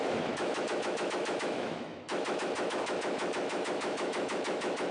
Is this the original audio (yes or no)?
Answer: no